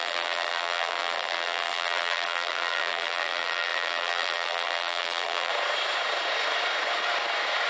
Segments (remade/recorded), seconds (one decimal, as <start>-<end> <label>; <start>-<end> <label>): 0.0-5.5 remade; 5.5-7.7 recorded